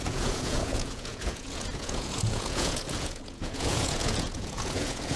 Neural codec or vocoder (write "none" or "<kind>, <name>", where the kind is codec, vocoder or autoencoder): vocoder, Vocos